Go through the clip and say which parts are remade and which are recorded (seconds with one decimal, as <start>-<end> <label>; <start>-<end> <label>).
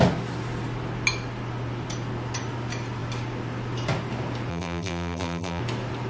0.0-4.5 recorded; 4.5-5.6 remade; 5.6-6.1 recorded